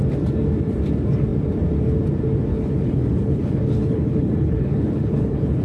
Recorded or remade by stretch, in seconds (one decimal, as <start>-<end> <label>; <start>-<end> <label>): 0.0-2.5 recorded; 2.5-5.6 remade